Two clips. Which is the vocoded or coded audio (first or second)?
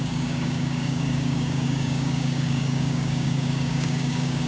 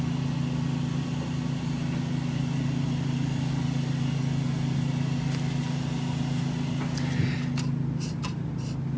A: first